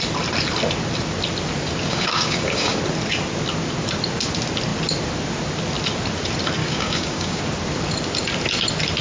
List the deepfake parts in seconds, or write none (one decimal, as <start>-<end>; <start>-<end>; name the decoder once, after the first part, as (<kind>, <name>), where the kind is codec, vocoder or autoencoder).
1.9-2.7 (codec, DAC); 6.6-7.4